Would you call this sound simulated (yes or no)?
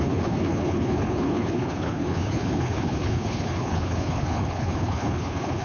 yes